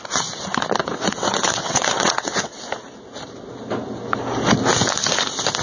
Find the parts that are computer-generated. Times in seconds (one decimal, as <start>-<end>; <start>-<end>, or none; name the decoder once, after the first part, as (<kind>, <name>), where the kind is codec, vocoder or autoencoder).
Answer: 0.8-2.6 (vocoder, WaveNeXt)